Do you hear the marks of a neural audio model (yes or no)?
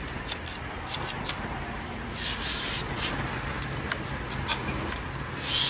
no